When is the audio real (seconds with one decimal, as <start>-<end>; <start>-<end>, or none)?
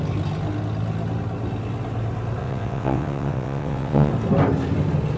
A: 0.0-2.4; 4.1-5.2